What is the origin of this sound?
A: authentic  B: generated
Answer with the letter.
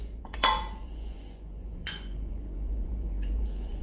B